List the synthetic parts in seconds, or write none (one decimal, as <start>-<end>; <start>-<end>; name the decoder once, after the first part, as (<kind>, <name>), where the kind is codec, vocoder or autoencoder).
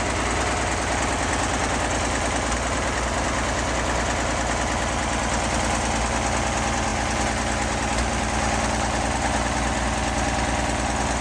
none